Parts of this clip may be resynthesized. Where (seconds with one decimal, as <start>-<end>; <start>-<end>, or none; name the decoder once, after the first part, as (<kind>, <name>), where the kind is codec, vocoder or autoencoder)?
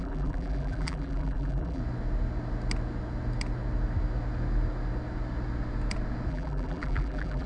0.0-1.8 (vocoder, BigVGAN v2); 6.3-7.5